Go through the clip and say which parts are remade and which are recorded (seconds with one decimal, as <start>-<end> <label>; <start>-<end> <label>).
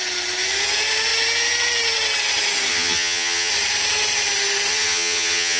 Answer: 0.0-2.7 recorded; 2.7-3.5 remade; 3.5-4.7 recorded; 4.7-5.6 remade